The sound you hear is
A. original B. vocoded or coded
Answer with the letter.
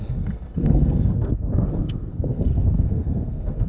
B